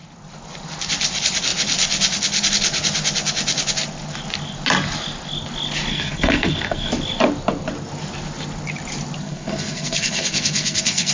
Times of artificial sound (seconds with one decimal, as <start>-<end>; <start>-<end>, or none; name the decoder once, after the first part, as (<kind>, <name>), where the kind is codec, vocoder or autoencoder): 5.9-6.9 (codec, SNAC); 9.2-11.1